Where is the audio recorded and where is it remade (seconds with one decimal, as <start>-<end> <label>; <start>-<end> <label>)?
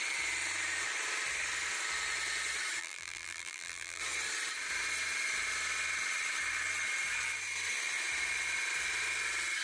0.0-2.8 recorded; 2.8-4.0 remade; 4.0-9.6 recorded